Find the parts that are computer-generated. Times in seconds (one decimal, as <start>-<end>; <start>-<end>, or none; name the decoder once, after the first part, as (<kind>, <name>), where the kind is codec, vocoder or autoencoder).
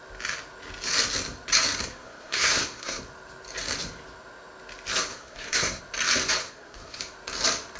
1.8-3.0 (codec, SNAC); 5.1-5.8; 6.4-7.0